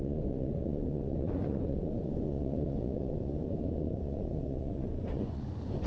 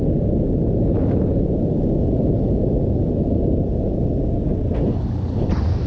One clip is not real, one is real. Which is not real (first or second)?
first